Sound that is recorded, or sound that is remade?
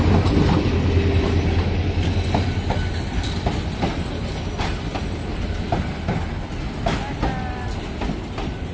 recorded